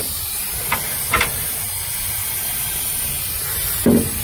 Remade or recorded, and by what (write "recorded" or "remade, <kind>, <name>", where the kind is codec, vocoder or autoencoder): recorded